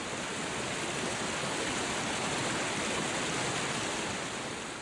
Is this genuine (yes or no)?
yes